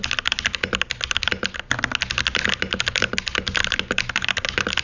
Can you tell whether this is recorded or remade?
recorded